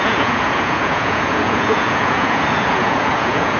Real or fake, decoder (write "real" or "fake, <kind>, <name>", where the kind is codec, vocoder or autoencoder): fake, vocoder, Vocos